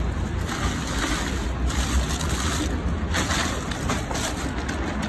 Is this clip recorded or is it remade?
recorded